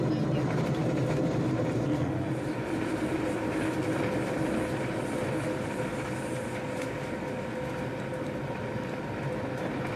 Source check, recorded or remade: recorded